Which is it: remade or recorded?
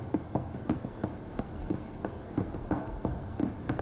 remade